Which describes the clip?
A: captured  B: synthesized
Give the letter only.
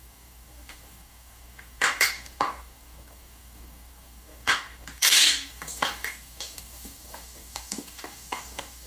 B